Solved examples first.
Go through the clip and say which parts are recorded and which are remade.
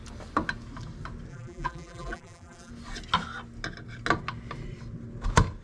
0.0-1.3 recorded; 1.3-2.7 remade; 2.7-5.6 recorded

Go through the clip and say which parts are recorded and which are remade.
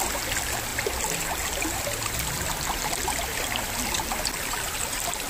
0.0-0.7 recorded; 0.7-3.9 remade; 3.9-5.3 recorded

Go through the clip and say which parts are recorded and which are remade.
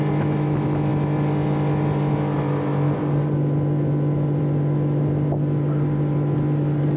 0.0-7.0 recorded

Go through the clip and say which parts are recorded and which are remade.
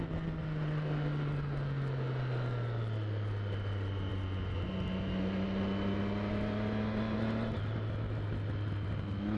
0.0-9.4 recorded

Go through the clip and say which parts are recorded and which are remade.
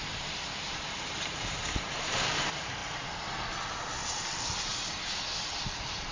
0.0-2.8 remade; 2.8-4.0 recorded; 4.0-4.7 remade; 4.7-5.4 recorded; 5.4-6.1 remade